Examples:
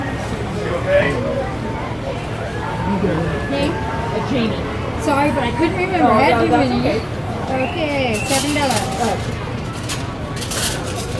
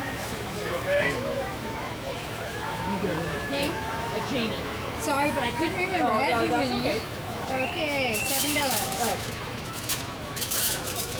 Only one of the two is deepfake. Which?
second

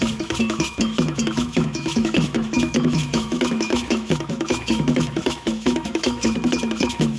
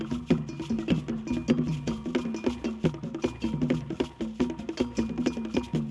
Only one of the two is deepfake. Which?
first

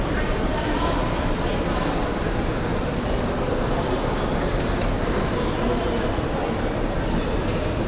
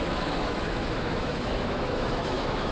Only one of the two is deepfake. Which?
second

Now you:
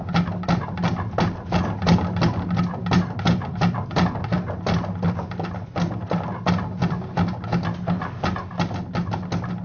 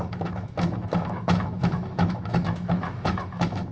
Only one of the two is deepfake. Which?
second